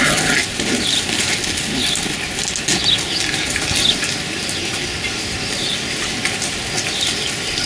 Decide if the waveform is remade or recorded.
recorded